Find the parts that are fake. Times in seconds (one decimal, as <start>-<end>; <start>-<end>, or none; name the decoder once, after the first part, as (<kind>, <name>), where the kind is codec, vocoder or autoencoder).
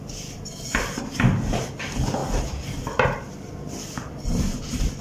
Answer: 2.2-4.3 (vocoder, BigVGAN v2)